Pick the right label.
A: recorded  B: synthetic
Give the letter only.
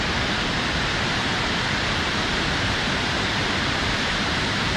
B